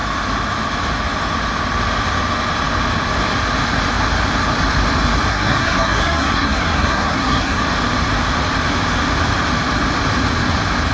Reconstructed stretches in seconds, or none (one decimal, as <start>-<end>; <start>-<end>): 5.3-7.6